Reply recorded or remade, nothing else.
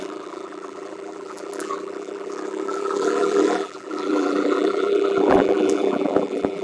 remade